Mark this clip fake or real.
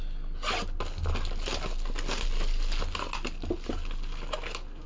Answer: real